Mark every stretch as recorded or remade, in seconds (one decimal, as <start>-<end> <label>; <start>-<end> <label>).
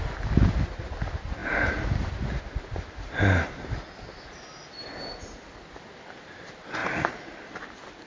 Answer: 0.0-8.1 recorded